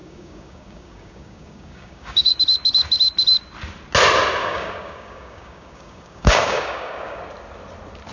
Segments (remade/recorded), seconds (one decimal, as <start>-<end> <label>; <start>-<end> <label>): 0.0-2.4 remade; 2.4-4.4 recorded; 4.4-7.2 remade; 7.2-8.1 recorded